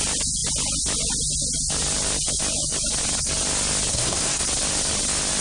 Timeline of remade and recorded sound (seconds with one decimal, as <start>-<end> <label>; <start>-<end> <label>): 0.0-3.9 recorded; 3.9-4.4 remade; 4.4-5.4 recorded